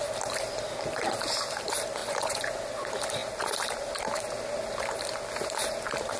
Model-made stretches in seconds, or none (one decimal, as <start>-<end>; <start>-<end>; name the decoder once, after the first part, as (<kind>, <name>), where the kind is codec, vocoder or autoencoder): 2.0-2.6 (vocoder, Vocos)

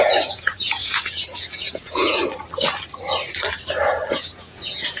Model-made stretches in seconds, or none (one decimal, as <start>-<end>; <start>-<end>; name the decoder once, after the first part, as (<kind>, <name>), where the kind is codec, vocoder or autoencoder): 0.0-2.2 (vocoder, Vocos); 4.1-5.0

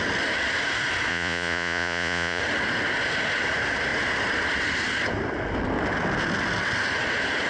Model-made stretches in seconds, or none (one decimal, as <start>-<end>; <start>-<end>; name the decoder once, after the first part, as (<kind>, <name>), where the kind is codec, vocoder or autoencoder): 1.1-2.4 (vocoder, Vocos)

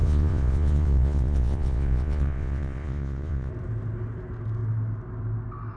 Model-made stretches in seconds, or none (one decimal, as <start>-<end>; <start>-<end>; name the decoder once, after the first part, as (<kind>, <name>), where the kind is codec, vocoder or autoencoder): 0.0-3.5 (vocoder, Vocos)

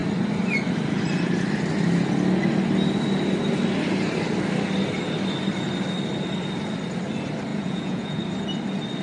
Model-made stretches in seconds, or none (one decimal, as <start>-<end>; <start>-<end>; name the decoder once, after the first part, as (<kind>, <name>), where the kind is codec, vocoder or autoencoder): 7.5-8.2 (vocoder, Vocos)

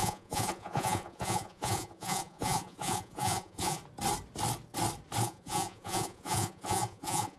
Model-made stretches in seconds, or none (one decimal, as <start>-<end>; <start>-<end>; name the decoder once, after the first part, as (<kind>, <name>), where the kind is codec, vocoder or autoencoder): 0.0-3.8 (vocoder, Vocos); 5.2-7.4

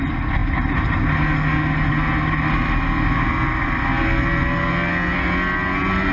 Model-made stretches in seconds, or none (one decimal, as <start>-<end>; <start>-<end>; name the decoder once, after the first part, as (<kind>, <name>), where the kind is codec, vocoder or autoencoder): none